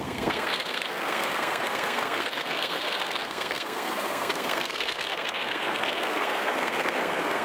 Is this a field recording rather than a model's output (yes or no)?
no